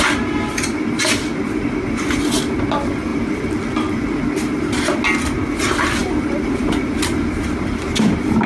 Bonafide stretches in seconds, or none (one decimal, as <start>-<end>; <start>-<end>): 0.0-8.5